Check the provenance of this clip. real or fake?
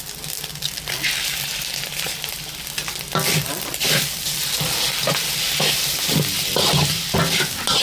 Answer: real